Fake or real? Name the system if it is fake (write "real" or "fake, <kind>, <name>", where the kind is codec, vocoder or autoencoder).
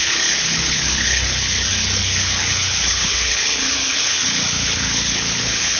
fake, codec, HILCodec